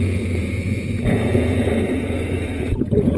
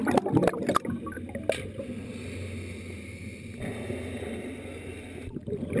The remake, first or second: first